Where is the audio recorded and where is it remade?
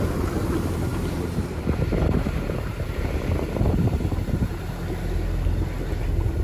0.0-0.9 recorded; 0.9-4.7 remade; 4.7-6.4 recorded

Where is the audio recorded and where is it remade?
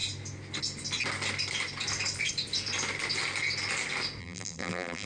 0.0-4.2 recorded; 4.2-5.1 remade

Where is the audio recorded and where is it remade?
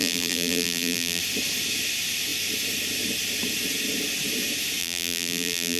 0.0-1.2 remade; 1.2-4.8 recorded; 4.8-5.8 remade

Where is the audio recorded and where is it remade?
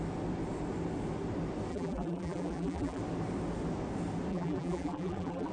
0.0-1.7 recorded; 1.7-3.0 remade; 3.0-4.3 recorded; 4.3-5.5 remade